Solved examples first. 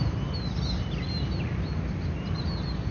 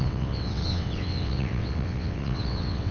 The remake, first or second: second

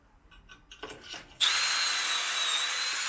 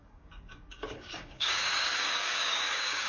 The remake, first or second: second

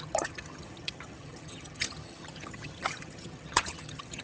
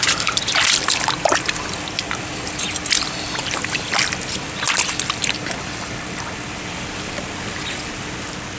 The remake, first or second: first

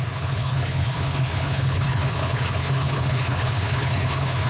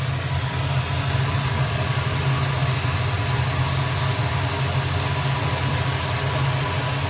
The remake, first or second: first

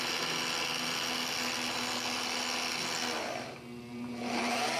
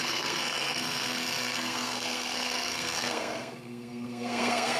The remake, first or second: second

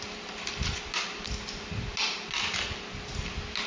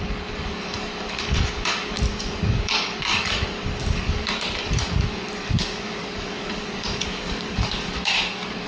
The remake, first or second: second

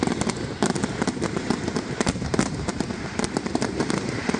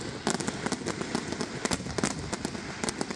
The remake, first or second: first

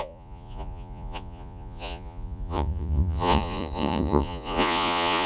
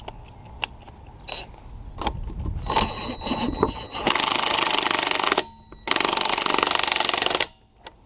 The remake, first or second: first